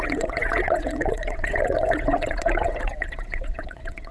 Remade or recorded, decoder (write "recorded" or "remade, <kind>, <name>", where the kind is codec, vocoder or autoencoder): remade, vocoder, WaveNeXt